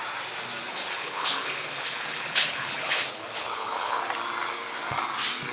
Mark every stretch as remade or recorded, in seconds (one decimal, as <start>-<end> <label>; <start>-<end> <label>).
0.0-0.7 recorded; 0.7-4.0 remade; 4.0-5.5 recorded